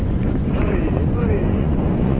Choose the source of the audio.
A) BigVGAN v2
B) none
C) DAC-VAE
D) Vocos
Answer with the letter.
D